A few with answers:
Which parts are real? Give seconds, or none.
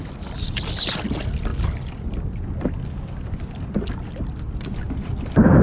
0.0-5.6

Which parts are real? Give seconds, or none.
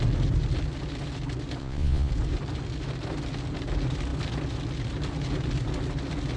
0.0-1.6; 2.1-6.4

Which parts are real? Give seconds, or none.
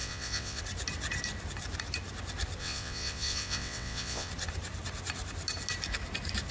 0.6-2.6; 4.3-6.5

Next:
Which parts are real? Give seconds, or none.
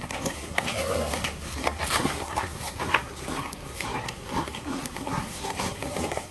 none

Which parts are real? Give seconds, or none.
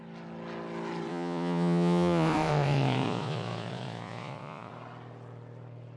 0.0-1.1; 4.7-6.0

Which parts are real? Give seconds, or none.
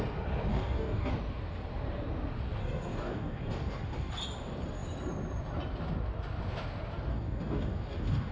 0.0-0.5; 1.1-2.6; 4.1-7.1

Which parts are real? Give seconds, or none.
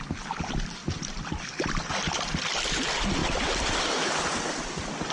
0.0-0.8; 1.9-3.2; 3.9-5.1